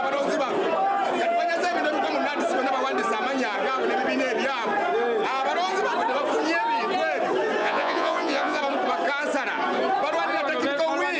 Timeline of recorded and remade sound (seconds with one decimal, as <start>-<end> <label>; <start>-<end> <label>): 0.0-7.6 recorded; 7.6-8.6 remade; 8.6-11.2 recorded